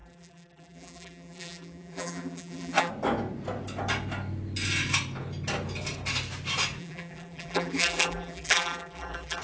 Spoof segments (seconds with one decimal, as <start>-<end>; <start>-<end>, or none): 0.0-2.9; 6.8-9.4